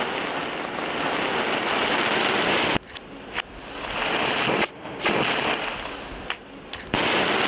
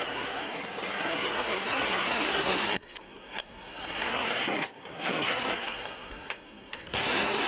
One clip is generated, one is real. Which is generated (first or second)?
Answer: second